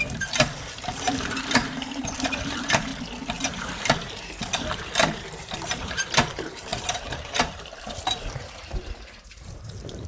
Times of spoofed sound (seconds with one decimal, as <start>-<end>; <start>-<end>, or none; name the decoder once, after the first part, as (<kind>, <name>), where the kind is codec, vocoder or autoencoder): 0.0-2.9 (vocoder, BigVGAN v2); 3.5-10.1